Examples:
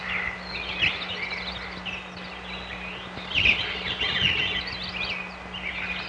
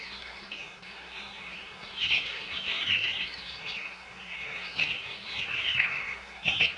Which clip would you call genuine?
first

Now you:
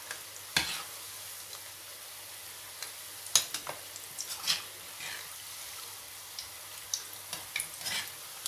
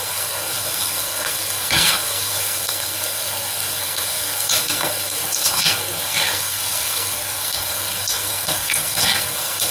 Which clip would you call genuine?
first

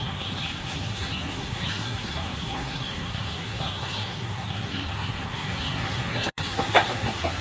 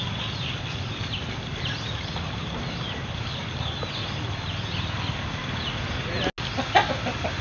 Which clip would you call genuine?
second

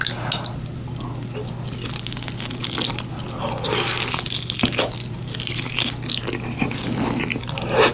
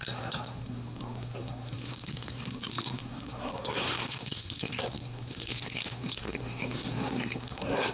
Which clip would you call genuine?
first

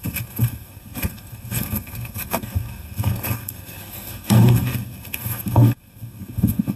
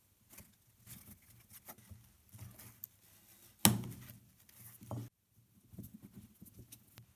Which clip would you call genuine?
second